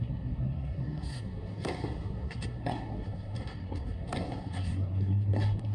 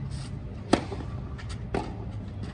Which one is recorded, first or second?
second